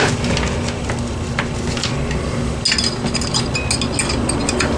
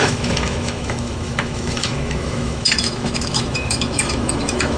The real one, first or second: first